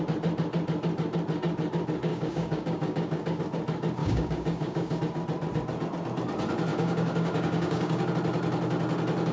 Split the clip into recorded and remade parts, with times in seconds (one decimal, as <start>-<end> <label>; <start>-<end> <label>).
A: 0.0-2.1 recorded; 2.1-3.4 remade; 3.4-4.0 recorded; 4.0-5.0 remade; 5.0-6.7 recorded; 6.7-8.1 remade; 8.1-9.3 recorded